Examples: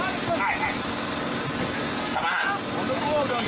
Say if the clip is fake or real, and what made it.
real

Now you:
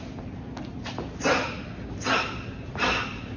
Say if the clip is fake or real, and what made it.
real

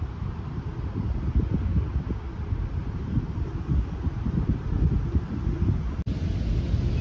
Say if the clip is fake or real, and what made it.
real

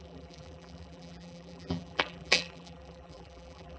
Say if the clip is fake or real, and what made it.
fake, vocoder, BigVGAN v2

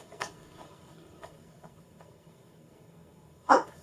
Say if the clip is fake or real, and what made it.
fake, codec, SNAC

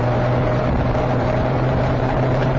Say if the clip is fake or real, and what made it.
fake, vocoder, BigVGAN v2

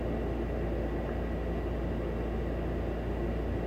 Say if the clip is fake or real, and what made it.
real